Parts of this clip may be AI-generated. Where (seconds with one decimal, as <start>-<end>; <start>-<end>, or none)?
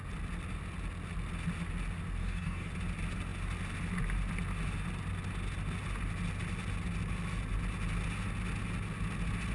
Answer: 2.2-2.7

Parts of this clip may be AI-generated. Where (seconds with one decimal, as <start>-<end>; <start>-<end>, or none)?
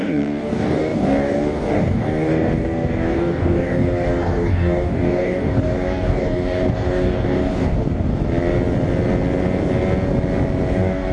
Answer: 0.0-8.1; 10.7-11.1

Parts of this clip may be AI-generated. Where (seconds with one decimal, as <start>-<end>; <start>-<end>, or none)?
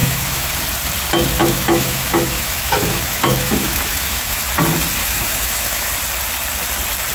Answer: 0.0-0.5; 1.4-4.4; 5.0-5.9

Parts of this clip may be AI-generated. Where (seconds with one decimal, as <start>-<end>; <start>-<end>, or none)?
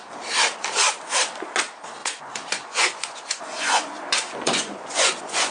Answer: 2.0-5.5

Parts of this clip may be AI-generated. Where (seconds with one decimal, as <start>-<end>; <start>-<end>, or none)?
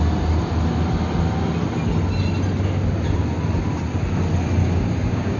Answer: 4.6-5.4